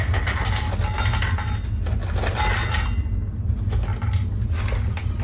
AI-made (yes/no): no